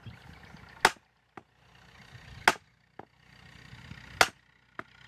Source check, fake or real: real